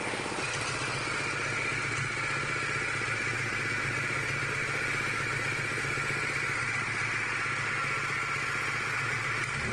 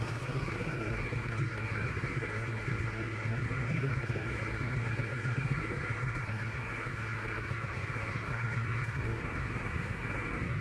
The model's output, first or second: second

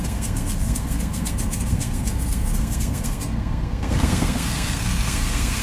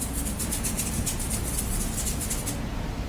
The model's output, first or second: first